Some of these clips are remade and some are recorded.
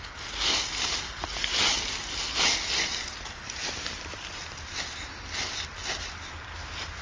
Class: recorded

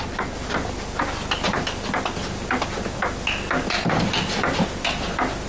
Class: recorded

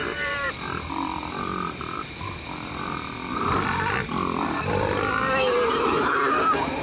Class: recorded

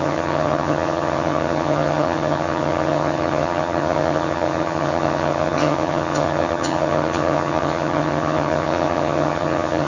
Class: remade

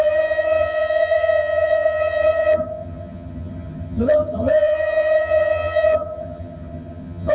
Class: remade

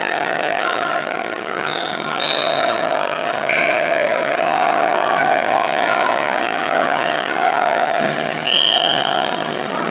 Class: remade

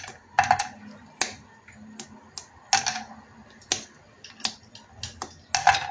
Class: recorded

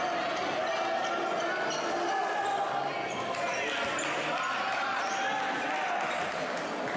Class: recorded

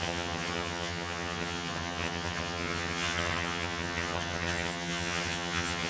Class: remade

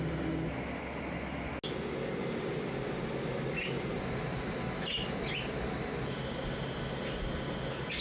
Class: recorded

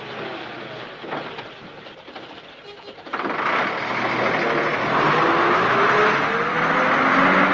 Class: recorded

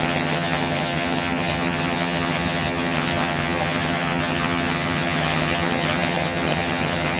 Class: remade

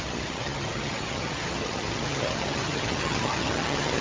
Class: remade